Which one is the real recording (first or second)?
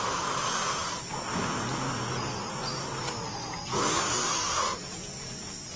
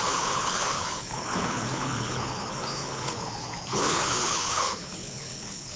first